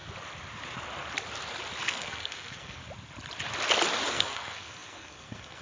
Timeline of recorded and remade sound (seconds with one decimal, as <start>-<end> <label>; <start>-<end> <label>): 0.0-1.8 recorded; 1.8-2.8 remade; 2.8-4.1 recorded; 4.1-5.6 remade